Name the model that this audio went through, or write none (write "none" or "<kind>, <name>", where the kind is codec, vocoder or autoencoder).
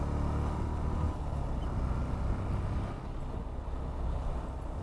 none